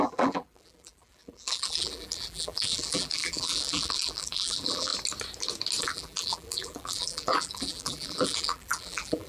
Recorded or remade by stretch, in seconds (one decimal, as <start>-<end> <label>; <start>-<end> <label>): 0.0-4.9 remade; 4.9-5.8 recorded; 5.8-9.3 remade